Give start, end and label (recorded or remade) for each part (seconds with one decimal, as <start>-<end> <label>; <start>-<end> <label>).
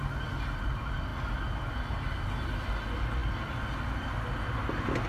0.0-5.1 recorded